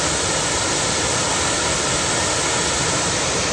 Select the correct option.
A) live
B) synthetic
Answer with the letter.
A